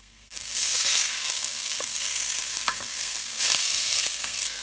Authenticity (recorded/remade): remade